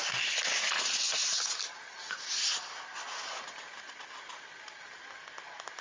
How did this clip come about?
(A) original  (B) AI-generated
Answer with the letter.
A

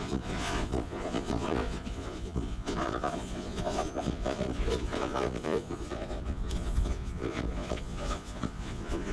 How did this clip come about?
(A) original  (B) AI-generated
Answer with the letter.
B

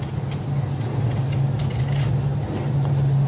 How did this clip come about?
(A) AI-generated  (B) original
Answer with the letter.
B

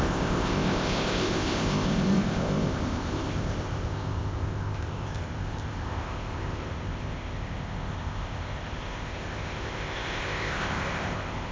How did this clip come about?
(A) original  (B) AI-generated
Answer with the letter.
B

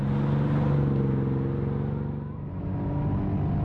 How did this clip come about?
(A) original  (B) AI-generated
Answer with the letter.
A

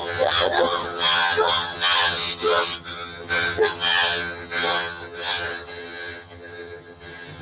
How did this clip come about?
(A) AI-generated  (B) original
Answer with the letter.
A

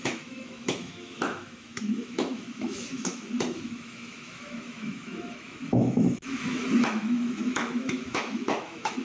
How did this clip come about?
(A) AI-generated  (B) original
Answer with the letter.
A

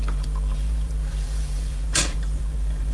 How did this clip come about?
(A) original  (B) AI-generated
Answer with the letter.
B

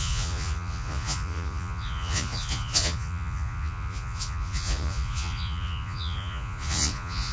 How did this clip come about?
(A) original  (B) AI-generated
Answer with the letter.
B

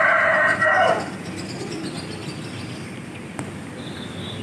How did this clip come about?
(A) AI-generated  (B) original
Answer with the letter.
B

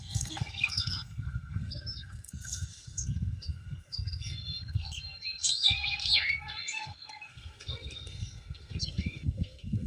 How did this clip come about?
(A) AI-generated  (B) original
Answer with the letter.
A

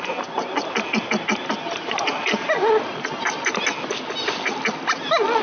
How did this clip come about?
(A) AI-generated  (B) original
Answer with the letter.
B